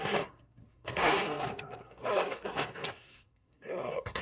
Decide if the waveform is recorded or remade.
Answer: remade